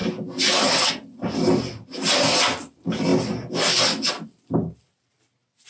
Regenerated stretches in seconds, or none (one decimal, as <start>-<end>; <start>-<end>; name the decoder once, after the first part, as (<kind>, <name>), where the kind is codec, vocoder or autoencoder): none